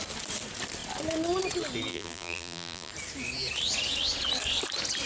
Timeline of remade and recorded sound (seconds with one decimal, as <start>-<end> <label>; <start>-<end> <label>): 0.0-1.9 recorded; 1.9-2.9 remade; 2.9-5.1 recorded